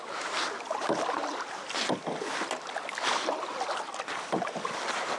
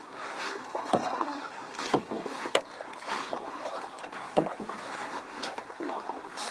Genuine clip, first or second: first